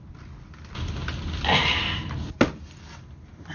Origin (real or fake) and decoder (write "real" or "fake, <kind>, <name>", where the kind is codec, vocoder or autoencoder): real